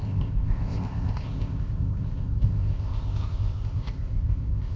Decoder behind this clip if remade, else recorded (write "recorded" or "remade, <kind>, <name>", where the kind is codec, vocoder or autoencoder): remade, codec, ZipCodec